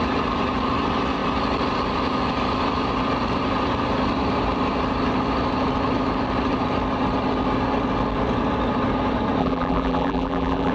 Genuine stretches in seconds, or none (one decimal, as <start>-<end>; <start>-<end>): 0.0-9.4